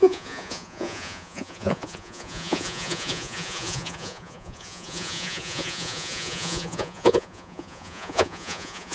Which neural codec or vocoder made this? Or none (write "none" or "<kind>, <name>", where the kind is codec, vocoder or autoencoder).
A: vocoder, Vocos